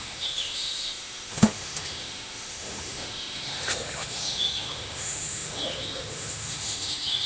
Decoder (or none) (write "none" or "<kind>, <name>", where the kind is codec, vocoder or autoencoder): autoencoder, DAC-VAE